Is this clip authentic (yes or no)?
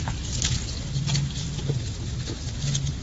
yes